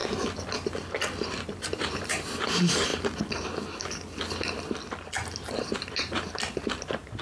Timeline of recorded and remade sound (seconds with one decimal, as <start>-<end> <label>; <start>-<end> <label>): 0.0-1.3 recorded; 1.3-2.9 remade; 2.9-5.5 recorded; 5.5-7.2 remade